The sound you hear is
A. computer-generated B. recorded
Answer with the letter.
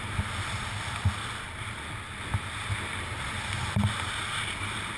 B